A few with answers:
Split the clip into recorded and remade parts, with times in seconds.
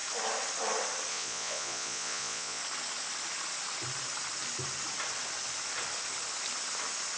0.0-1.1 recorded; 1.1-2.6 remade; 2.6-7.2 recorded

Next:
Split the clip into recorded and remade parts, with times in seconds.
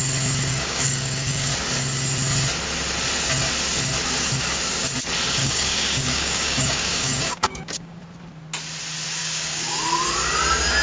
0.0-0.5 recorded; 0.5-1.5 remade; 1.5-5.4 recorded; 5.4-8.0 remade; 8.0-9.2 recorded; 9.2-9.8 remade; 9.8-10.8 recorded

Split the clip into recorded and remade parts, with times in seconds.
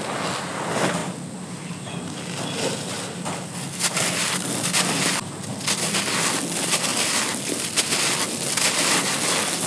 0.0-9.7 recorded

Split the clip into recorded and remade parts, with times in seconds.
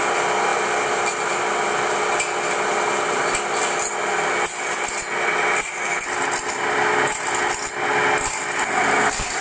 0.0-9.4 recorded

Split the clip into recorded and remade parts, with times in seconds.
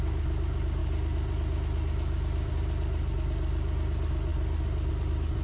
0.0-5.4 recorded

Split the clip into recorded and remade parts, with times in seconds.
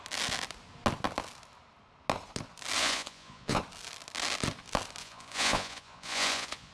0.0-2.8 recorded; 2.8-3.6 remade; 3.6-5.0 recorded; 5.0-6.7 remade